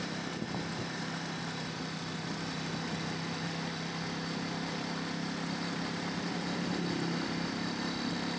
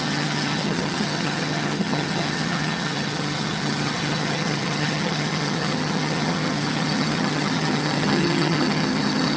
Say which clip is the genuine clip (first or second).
first